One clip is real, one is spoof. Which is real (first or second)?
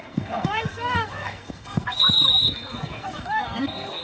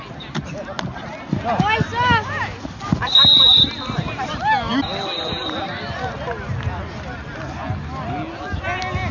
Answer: second